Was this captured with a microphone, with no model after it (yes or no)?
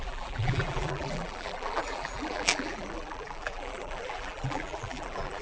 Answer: no